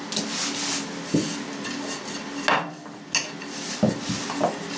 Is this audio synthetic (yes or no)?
no